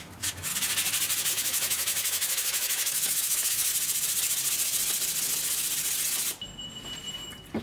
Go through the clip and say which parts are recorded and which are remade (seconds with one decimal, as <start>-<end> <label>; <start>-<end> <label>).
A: 0.0-0.5 remade; 0.5-1.3 recorded; 1.3-3.7 remade; 3.7-7.6 recorded